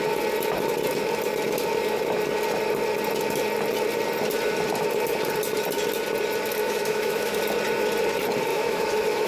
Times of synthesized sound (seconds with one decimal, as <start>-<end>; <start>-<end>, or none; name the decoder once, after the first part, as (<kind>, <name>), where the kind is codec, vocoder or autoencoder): 6.6-7.4 (autoencoder, DAC-VAE); 8.5-9.3